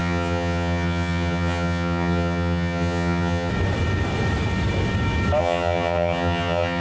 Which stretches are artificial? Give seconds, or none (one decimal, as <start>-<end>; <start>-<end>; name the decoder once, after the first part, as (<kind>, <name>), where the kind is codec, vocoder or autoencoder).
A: 0.0-3.5 (vocoder, HiFi-GAN); 5.4-6.8